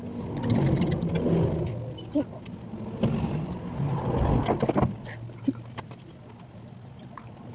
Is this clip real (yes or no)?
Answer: yes